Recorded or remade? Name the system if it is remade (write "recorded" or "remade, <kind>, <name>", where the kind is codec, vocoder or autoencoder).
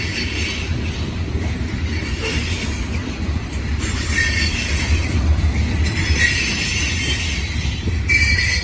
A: remade, vocoder, BigVGAN v2